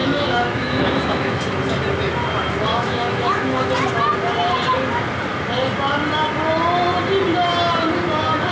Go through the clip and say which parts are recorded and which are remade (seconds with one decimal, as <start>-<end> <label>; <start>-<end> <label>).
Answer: 0.0-1.4 remade; 1.4-2.7 recorded; 2.7-3.7 remade; 3.7-8.5 recorded